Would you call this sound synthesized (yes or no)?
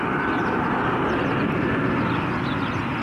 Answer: no